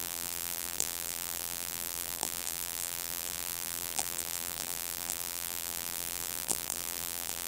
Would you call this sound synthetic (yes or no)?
yes